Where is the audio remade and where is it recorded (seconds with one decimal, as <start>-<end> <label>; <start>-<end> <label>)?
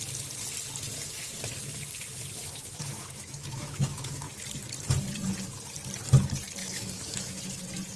0.0-2.4 recorded; 2.4-4.3 remade; 4.3-6.6 recorded; 6.6-7.4 remade; 7.4-8.0 recorded